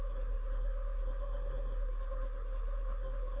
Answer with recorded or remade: remade